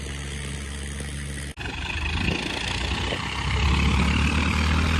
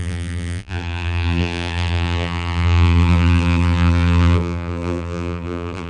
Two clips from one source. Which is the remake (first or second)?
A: second